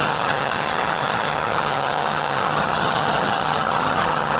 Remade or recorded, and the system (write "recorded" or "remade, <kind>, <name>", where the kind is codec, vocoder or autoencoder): remade, vocoder, HiFi-GAN